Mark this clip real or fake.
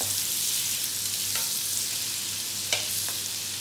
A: real